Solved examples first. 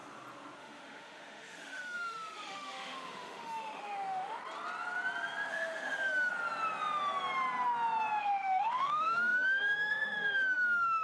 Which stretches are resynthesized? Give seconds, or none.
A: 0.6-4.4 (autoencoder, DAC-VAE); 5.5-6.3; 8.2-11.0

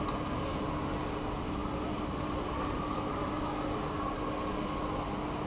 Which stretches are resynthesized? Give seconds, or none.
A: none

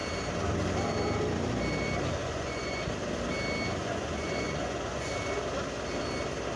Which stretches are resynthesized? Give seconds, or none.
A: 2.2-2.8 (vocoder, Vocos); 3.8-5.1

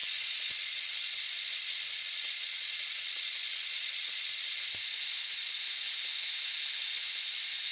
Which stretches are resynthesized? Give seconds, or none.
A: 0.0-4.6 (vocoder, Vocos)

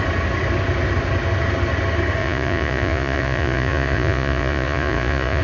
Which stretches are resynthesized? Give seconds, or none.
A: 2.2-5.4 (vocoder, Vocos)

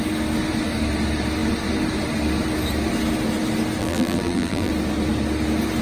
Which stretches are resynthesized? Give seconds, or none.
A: 3.8-4.7 (vocoder, BigVGAN v2)